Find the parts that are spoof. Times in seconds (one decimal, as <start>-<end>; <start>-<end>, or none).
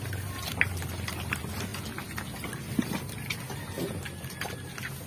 none